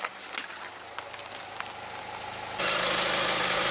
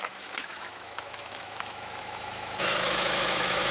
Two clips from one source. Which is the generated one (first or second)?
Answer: second